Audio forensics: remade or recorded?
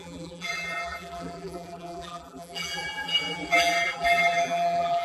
remade